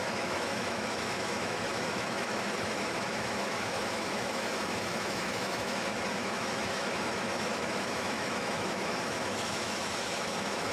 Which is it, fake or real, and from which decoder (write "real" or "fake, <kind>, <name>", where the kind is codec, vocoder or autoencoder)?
fake, autoencoder, DAC-VAE